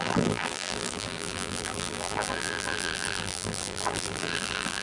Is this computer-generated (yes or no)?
yes